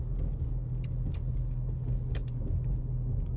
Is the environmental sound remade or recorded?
recorded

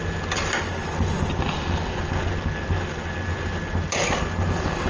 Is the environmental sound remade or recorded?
recorded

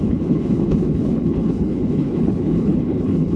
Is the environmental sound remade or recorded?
remade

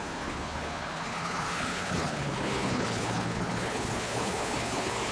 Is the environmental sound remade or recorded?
remade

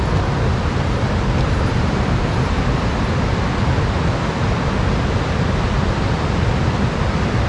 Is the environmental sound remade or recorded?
recorded